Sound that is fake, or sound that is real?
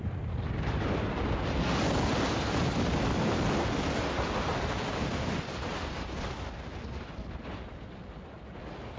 real